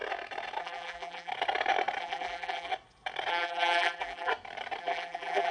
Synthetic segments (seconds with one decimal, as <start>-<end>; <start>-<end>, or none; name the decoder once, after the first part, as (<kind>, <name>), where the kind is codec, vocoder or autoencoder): 0.6-1.3 (vocoder, BigVGAN v2); 2.0-2.7; 3.3-4.3; 4.8-5.5